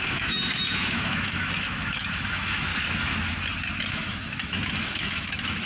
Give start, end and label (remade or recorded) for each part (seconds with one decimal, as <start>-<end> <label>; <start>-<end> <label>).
0.0-2.7 remade; 2.7-3.9 recorded; 3.9-5.7 remade